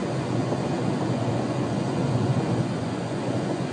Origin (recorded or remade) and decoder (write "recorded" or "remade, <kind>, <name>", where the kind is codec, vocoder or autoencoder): remade, vocoder, Vocos